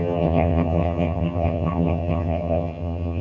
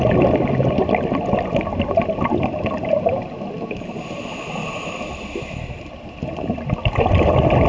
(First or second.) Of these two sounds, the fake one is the first